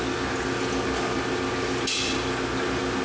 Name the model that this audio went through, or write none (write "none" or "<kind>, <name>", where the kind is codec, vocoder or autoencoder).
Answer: none